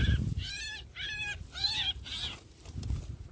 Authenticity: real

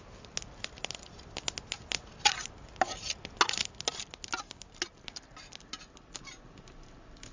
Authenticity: real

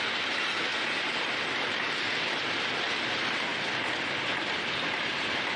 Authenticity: real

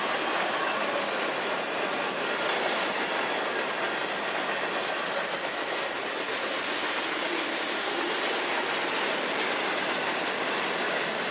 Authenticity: real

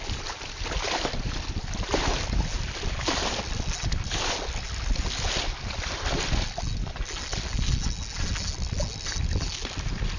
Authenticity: real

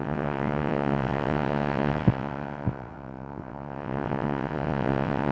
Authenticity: fake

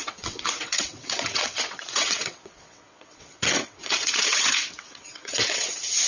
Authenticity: fake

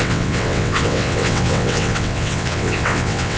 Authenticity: fake